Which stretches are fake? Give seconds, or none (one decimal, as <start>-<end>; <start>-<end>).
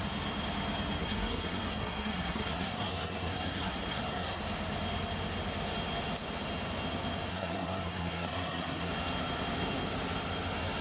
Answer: 1.0-4.4; 7.3-8.9